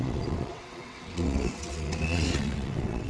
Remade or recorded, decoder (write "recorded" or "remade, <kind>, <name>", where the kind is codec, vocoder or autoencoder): remade, vocoder, WaveNeXt